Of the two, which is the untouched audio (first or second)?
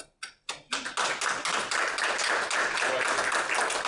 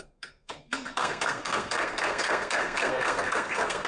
first